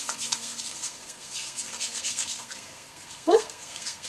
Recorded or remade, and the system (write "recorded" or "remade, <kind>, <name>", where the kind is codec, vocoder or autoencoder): remade, codec, SNAC